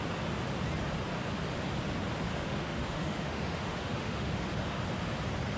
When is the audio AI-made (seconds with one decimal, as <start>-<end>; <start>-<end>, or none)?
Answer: 2.3-4.8